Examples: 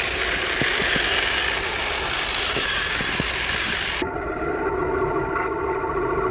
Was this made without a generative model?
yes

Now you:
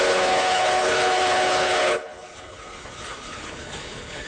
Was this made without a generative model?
no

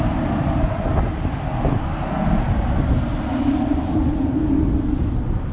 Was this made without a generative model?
yes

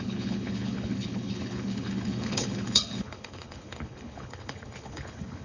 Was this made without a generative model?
no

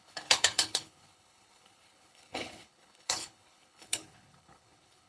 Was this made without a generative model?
no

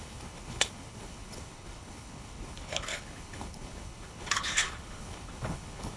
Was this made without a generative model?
no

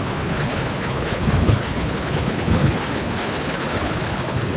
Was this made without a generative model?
no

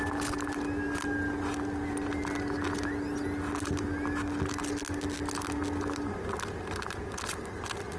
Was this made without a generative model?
yes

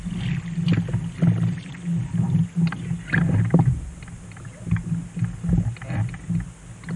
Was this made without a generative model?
yes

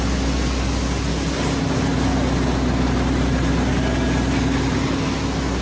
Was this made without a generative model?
yes